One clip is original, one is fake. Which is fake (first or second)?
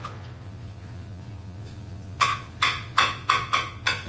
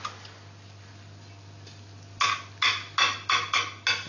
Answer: first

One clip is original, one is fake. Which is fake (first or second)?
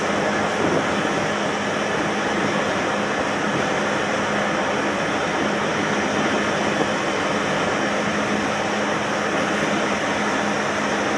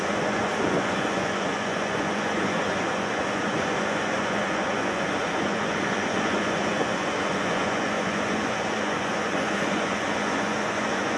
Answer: second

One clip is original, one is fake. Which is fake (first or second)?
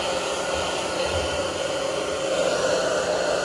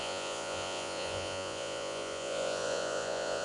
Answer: second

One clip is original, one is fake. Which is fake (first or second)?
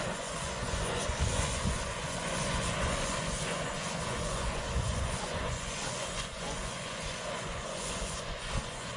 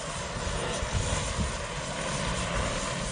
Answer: first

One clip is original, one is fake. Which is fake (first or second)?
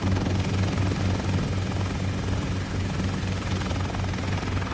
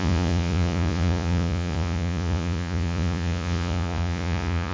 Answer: second